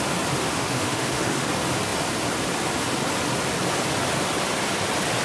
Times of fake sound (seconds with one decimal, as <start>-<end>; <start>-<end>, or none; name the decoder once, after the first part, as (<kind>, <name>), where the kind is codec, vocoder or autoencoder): 0.4-1.5 (autoencoder, DAC-VAE)